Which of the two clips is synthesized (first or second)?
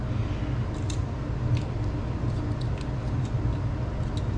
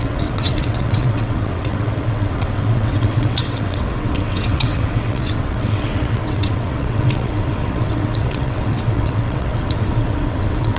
second